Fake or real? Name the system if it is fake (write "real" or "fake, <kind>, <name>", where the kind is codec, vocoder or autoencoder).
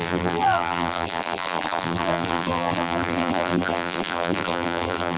fake, vocoder, BigVGAN v2